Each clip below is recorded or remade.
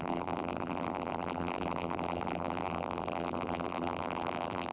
remade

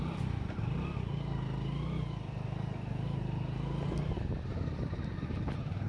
recorded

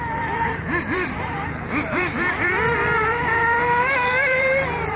remade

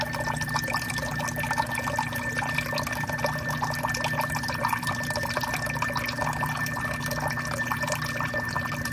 recorded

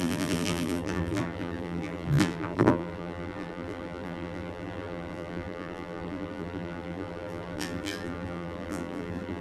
remade